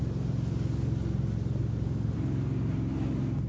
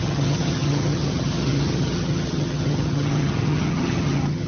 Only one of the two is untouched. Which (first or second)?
first